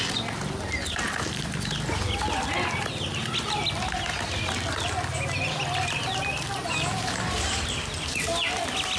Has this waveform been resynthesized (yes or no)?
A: no